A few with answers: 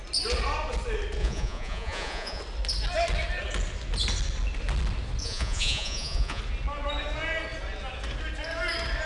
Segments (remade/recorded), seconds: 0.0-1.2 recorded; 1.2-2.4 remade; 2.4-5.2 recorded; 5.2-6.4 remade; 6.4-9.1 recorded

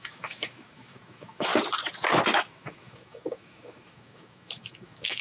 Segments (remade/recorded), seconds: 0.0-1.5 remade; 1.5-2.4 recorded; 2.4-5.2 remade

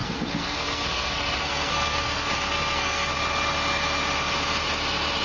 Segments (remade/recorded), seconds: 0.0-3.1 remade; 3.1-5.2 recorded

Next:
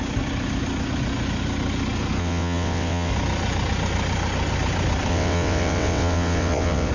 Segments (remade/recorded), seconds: 0.0-2.2 recorded; 2.2-3.1 remade; 3.1-5.1 recorded; 5.1-6.9 remade

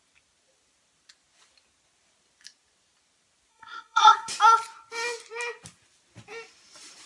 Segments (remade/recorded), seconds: 0.0-3.5 recorded; 3.5-4.3 remade; 4.3-7.1 recorded